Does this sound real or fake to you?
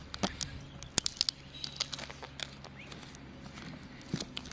real